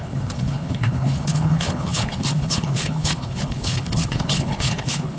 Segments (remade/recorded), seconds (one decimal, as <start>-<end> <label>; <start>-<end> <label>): 0.0-5.2 remade

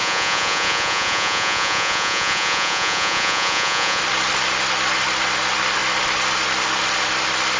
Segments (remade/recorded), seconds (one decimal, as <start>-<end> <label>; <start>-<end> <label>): 0.0-4.0 remade; 4.0-7.6 recorded

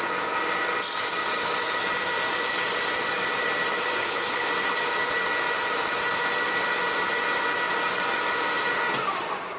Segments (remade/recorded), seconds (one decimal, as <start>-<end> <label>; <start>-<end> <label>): 0.0-4.0 recorded; 4.0-4.5 remade; 4.5-9.6 recorded

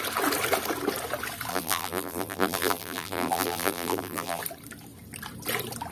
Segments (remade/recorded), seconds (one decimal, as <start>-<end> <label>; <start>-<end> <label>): 0.0-1.5 recorded; 1.5-4.4 remade; 4.4-5.9 recorded

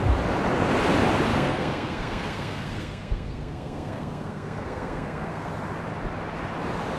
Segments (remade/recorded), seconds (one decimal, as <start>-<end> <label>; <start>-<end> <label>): 0.0-1.3 recorded; 1.3-5.5 remade; 5.5-7.0 recorded